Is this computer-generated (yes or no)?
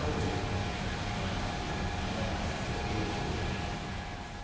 no